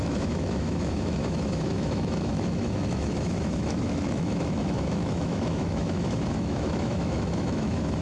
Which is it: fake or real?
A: fake